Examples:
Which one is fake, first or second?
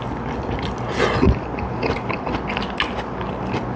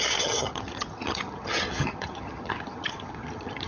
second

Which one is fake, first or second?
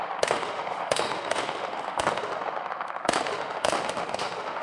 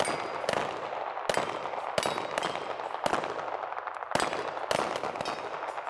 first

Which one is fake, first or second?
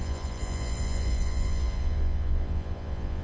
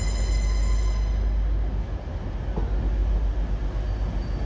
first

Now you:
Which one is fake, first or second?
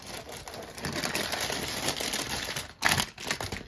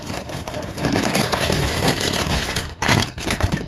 second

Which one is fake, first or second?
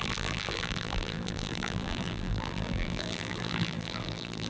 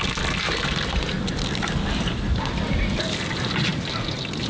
first